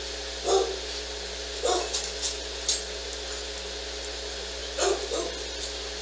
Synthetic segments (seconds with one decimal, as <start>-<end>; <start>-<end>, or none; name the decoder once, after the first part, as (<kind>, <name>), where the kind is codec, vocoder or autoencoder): none